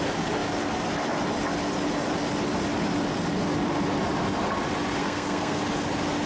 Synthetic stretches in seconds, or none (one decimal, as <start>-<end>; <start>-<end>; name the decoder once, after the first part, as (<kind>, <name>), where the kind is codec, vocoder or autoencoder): 5.0-5.6 (codec, SNAC)